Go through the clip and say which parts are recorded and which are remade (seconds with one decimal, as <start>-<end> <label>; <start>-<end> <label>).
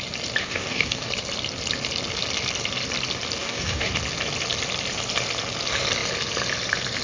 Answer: 0.0-0.4 recorded; 0.4-1.1 remade; 1.1-3.4 recorded; 3.4-3.9 remade; 3.9-7.0 recorded